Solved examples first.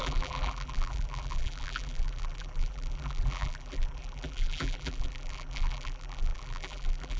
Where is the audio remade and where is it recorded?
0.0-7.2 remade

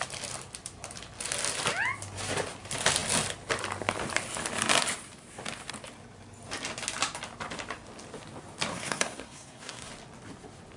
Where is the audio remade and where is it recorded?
0.0-8.7 recorded; 8.7-9.9 remade; 9.9-10.8 recorded